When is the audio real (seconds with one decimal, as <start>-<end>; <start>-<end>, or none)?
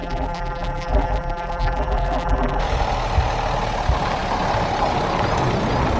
2.6-6.0